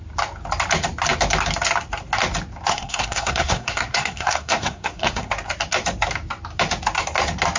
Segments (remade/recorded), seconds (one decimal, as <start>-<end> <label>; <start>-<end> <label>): 0.0-2.7 recorded; 2.7-5.3 remade; 5.3-7.6 recorded